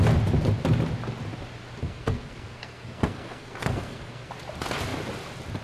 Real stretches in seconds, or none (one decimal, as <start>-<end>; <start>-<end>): 0.0-1.8; 4.3-5.6